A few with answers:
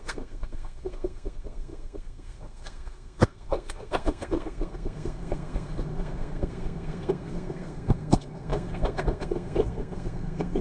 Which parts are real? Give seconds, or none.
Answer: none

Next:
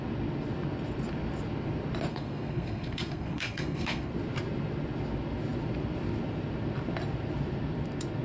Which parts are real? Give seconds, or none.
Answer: 0.0-2.1; 4.1-8.2

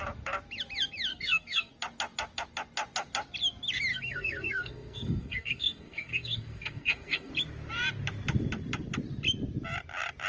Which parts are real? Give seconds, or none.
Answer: 0.0-1.1; 1.7-3.9; 7.3-10.3

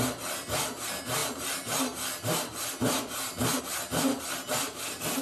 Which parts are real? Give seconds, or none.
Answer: 0.0-5.2